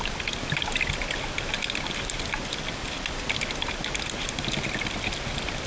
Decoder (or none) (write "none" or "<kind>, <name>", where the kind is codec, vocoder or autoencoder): none